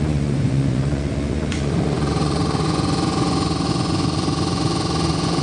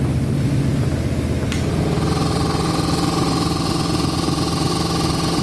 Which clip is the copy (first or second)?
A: first